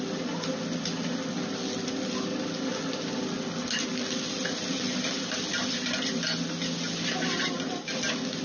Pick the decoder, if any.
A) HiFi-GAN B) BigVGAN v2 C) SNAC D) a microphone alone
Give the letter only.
D